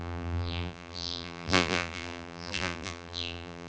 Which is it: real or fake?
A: fake